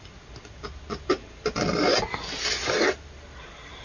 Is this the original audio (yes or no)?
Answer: yes